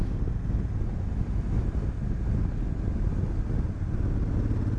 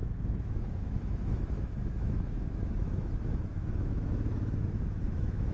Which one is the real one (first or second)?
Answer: first